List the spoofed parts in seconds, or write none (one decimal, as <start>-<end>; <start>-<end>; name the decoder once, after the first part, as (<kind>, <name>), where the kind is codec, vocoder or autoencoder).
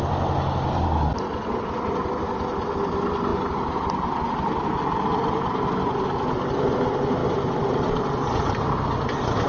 none